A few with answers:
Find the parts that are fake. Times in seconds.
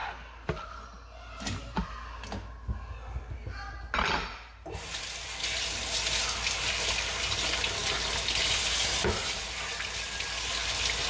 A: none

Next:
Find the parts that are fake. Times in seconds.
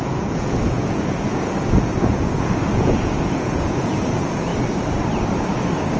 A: 0.0-4.5 (vocoder, Vocos)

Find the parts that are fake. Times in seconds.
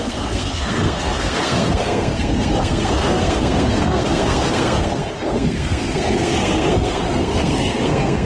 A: 0.0-8.3 (codec, SNAC)